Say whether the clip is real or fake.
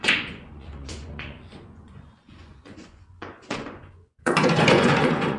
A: fake